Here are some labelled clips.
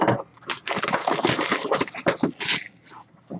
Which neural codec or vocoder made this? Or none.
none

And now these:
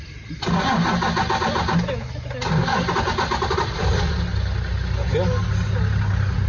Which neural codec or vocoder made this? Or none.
none